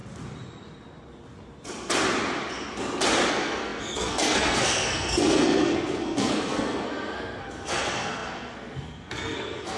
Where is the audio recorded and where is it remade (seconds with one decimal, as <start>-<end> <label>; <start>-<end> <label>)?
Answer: 0.0-3.3 recorded; 3.3-9.8 remade